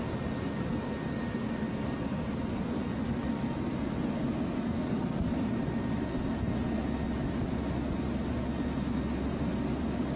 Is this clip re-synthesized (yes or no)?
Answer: no